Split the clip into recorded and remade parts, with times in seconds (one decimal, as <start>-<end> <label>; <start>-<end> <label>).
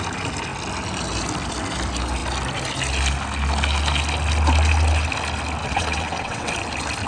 0.0-5.6 recorded; 5.6-6.5 remade; 6.5-7.1 recorded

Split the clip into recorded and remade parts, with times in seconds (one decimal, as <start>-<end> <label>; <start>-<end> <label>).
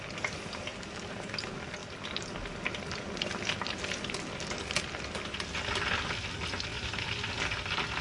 0.0-0.7 recorded; 0.7-1.3 remade; 1.3-6.7 recorded; 6.7-7.3 remade; 7.3-8.0 recorded